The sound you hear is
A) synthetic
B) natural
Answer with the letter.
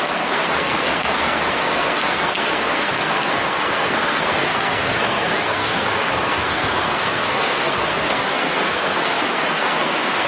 A